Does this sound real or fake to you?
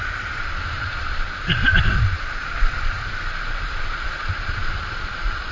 fake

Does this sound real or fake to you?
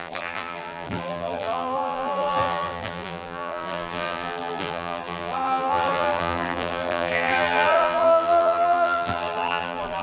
fake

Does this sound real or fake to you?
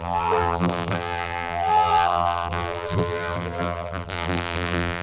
fake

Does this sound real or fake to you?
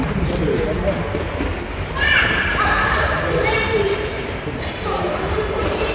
fake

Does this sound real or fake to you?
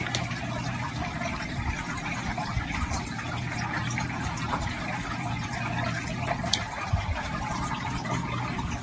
fake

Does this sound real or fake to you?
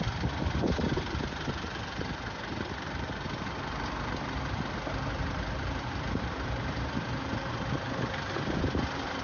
fake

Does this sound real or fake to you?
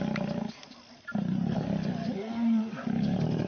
real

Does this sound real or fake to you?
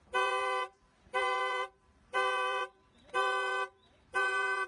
fake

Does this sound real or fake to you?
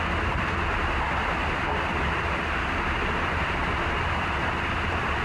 real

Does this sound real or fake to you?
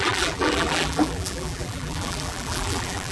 fake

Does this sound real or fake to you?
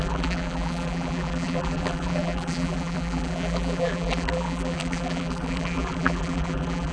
fake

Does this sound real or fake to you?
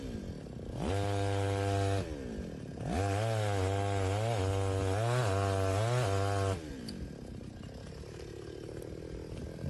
real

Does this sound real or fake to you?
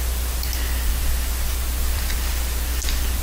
fake